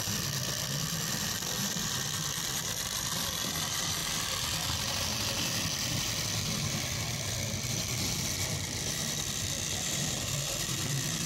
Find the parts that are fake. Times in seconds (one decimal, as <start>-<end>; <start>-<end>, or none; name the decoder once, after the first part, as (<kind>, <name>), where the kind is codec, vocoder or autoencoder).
0.0-4.0 (vocoder, BigVGAN v2); 7.0-11.3